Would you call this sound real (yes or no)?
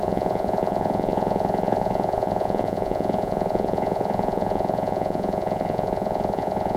no